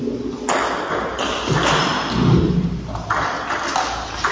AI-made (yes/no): no